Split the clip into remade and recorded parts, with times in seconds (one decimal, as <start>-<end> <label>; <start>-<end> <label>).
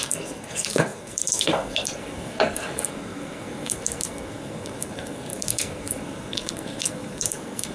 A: 0.0-7.7 remade